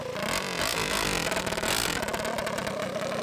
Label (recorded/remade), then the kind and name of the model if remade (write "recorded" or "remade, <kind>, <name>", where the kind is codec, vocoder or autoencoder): recorded